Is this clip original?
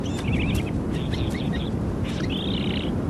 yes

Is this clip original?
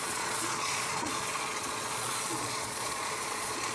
no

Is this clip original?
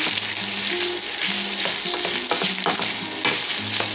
yes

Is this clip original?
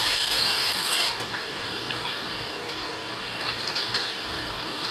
no